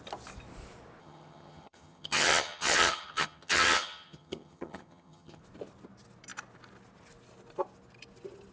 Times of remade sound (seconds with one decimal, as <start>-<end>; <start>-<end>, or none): 1.0-5.4